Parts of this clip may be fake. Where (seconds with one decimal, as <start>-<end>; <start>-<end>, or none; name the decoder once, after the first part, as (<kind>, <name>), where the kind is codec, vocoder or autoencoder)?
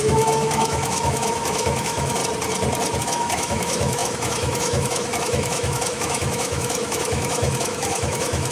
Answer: 0.0-2.2 (autoencoder, DAC-VAE); 3.0-8.5